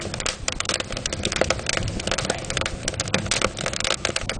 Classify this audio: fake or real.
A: real